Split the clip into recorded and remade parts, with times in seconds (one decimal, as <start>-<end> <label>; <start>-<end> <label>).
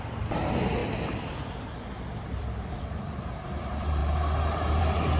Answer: 0.0-0.8 remade; 0.8-2.3 recorded; 2.3-4.0 remade; 4.0-4.8 recorded; 4.8-5.2 remade